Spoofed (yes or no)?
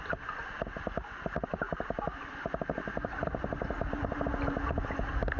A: no